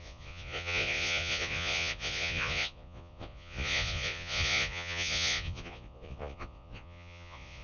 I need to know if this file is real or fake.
fake